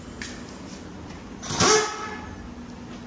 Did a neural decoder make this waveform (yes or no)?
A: no